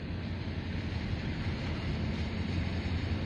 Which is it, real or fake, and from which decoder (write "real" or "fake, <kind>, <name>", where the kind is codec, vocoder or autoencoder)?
real